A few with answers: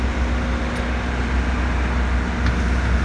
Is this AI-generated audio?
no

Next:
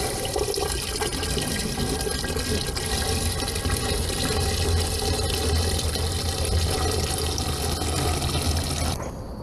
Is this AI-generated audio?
no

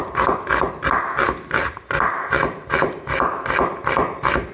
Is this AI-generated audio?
no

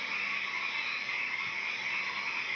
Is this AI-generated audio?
no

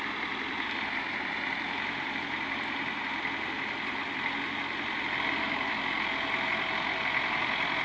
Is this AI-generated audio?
no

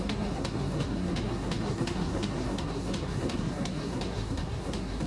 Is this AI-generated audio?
yes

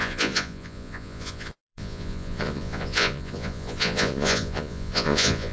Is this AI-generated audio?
yes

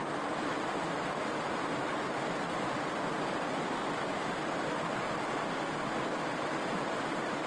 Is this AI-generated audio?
no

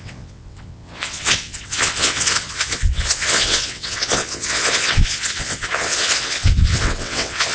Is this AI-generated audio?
yes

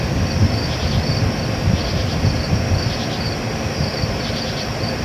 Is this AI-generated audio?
no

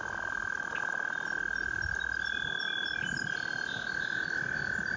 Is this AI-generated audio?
no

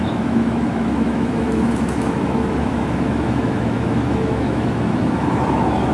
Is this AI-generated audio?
yes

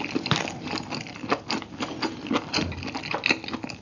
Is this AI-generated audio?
no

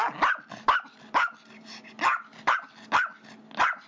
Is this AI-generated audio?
no